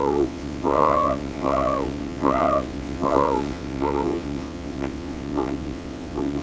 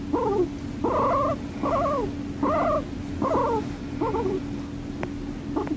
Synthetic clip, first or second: first